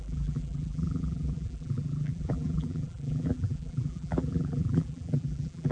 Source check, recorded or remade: remade